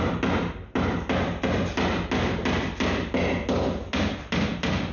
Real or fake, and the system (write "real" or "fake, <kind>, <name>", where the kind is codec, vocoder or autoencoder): real